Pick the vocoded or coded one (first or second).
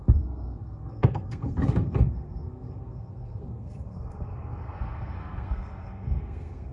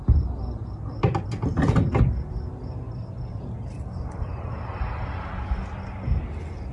first